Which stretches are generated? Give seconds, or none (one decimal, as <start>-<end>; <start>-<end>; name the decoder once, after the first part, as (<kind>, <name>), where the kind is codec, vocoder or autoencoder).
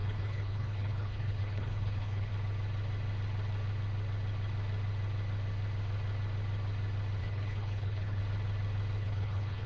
0.0-2.3 (codec, HILCodec); 7.2-8.2; 9.0-9.7